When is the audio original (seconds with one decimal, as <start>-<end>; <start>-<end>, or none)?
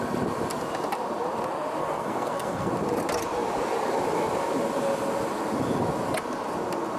0.0-1.8; 2.7-7.0